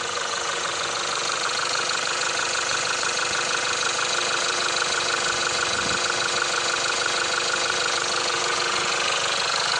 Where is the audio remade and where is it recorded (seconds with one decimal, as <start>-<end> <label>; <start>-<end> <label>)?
0.0-9.8 remade